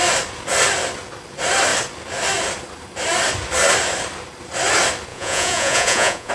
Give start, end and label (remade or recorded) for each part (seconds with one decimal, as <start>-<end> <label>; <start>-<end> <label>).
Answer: 0.0-5.1 recorded; 5.1-6.3 remade